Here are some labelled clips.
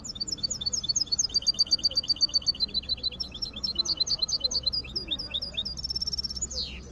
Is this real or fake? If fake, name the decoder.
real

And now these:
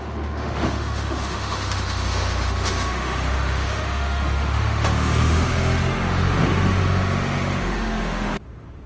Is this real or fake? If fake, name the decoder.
fake, autoencoder, DAC-VAE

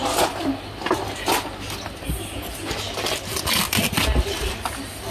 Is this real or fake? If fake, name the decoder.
real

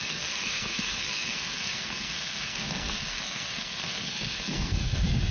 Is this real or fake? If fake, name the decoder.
fake, codec, SNAC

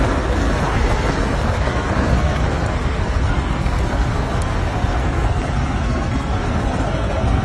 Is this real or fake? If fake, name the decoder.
fake, codec, SNAC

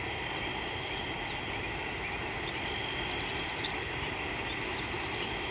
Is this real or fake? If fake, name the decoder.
real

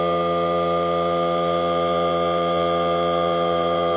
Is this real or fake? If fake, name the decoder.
fake, vocoder, BigVGAN v2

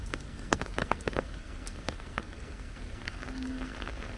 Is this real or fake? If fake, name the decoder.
fake, codec, SNAC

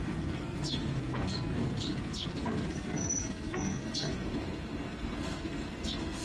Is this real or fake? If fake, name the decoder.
fake, codec, SNAC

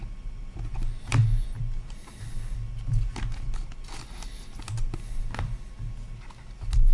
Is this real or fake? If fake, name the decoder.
real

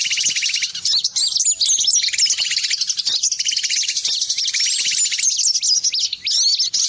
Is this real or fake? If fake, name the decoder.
real